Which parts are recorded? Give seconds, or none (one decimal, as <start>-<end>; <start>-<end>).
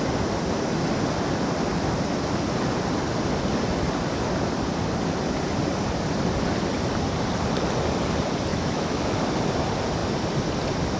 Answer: 0.0-8.5; 9.2-11.0